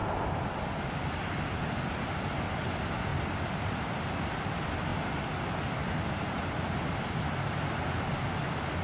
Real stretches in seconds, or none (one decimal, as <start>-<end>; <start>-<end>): 0.0-8.8